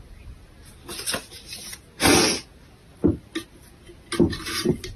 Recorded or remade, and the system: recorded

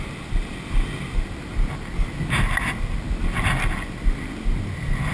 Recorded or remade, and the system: recorded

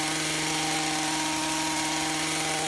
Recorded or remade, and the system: recorded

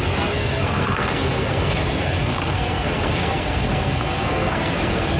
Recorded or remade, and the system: remade, codec, SNAC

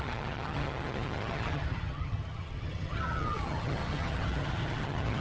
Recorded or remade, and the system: remade, vocoder, HiFi-GAN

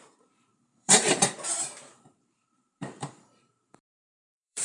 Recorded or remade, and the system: remade, vocoder, BigVGAN v2